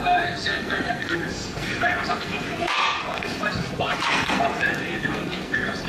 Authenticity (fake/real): fake